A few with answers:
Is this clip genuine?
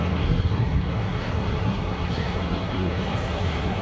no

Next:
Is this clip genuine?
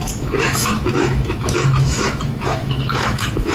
no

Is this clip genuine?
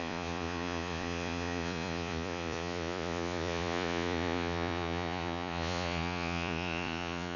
no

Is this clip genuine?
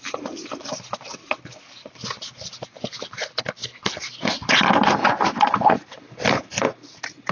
yes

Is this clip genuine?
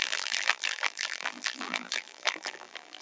no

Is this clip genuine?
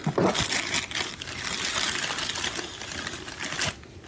yes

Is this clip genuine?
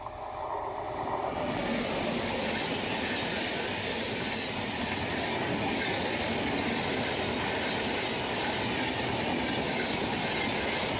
yes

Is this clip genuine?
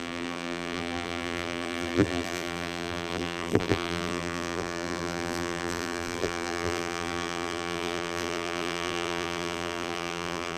no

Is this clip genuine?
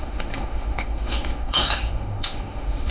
no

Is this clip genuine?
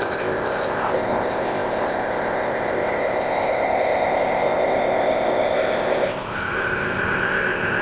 no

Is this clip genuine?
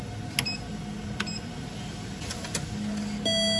yes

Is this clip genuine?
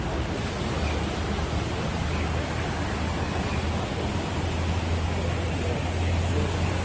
yes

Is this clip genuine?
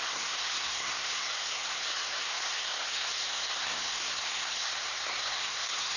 no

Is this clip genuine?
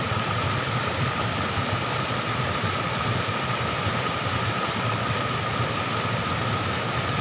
yes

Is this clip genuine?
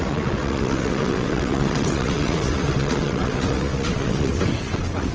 no